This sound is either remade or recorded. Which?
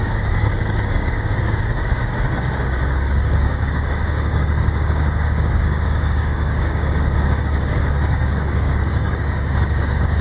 remade